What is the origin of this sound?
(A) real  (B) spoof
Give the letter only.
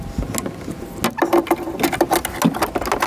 A